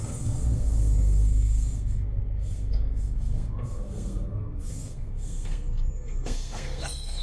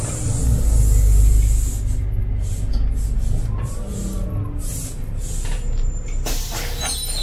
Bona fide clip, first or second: second